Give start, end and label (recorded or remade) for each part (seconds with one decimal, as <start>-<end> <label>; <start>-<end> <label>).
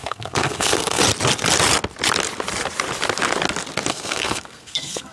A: 0.0-1.0 remade; 1.0-3.9 recorded; 3.9-5.1 remade